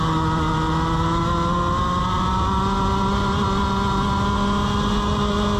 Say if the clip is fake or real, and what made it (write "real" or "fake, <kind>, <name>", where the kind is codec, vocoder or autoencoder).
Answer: real